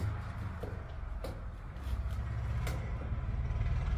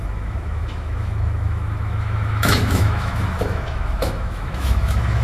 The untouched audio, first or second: first